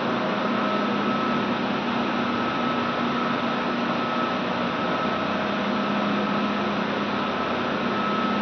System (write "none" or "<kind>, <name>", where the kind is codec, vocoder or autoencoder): none